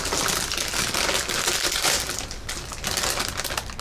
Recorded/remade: recorded